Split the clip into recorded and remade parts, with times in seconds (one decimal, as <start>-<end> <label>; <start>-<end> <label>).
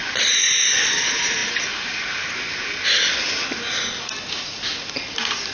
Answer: 0.0-5.5 recorded